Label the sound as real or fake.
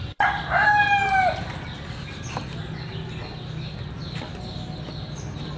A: real